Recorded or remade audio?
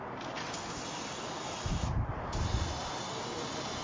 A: recorded